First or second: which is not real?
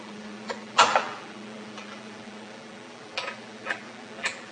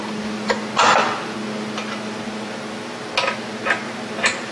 first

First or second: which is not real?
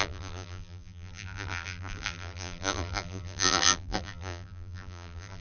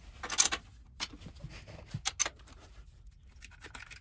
first